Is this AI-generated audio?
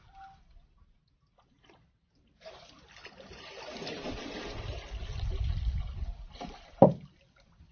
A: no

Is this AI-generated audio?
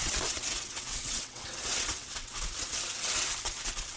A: yes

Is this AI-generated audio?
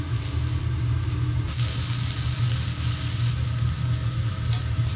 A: no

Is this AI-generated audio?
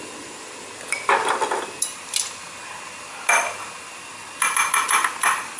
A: yes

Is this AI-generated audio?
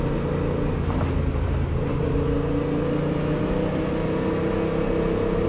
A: no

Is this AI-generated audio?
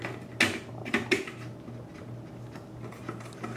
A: no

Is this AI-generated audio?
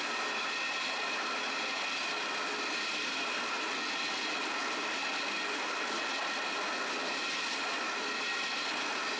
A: no